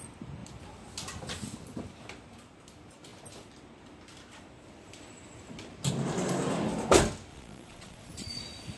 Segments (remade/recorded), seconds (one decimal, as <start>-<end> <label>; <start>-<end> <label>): 0.0-7.3 recorded; 7.3-8.1 remade; 8.1-8.8 recorded